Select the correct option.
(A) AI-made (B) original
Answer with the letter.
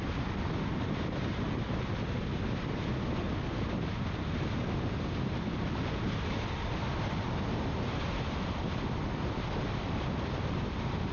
B